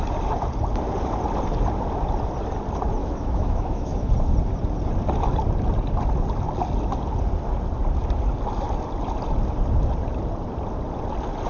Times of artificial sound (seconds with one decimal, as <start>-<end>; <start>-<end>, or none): 3.0-4.1